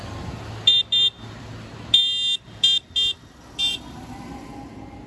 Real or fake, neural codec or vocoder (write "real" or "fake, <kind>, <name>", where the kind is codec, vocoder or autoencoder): real